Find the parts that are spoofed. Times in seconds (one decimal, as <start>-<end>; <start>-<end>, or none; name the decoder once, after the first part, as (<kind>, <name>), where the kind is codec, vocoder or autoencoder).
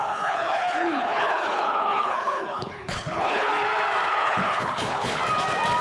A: 0.0-3.5 (codec, HILCodec); 4.1-5.2